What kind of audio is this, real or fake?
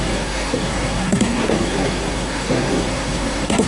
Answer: fake